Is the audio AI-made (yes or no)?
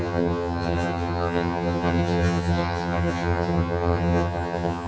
yes